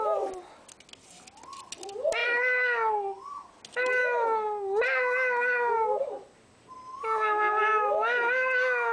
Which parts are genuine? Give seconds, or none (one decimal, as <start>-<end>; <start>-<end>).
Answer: 0.0-8.9